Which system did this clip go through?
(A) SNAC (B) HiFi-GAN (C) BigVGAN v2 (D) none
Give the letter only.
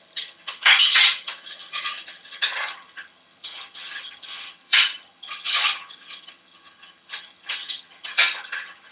B